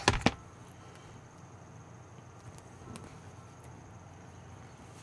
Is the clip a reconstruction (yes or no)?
no